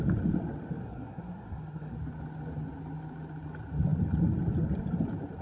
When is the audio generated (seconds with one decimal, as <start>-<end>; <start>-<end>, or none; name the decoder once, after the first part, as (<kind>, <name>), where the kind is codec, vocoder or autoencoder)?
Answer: 0.8-1.9 (codec, SNAC)